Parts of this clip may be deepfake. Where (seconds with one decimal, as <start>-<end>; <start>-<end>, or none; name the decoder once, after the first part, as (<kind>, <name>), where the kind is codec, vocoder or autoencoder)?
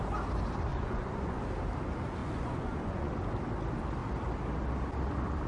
0.7-1.4 (vocoder, Vocos); 2.2-3.1